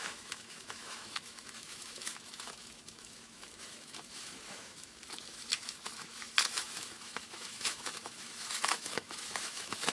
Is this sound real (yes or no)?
no